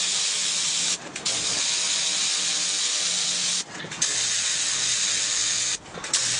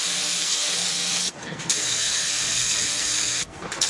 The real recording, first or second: first